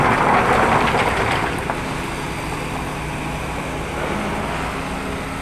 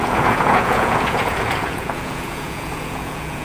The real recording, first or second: first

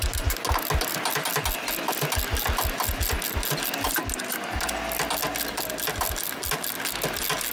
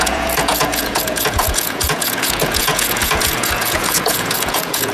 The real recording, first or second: first